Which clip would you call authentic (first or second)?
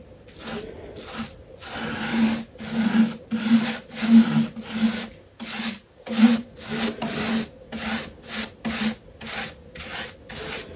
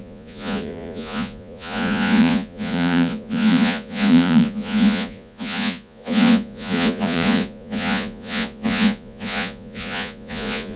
first